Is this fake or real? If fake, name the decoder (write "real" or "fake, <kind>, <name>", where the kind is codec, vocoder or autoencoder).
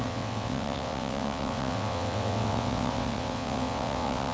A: fake, vocoder, WaveNeXt